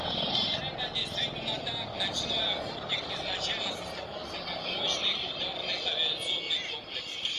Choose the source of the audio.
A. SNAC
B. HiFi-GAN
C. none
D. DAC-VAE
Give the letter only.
C